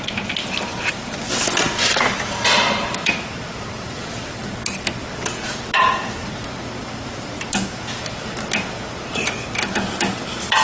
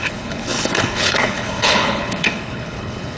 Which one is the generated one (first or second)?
second